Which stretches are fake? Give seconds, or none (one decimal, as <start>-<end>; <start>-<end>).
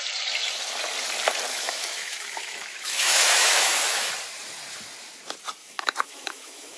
1.5-4.1; 5.6-6.8